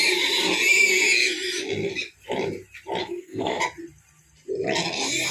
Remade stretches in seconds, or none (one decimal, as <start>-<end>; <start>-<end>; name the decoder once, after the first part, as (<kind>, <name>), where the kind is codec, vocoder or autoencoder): 3.0-3.6 (codec, SNAC)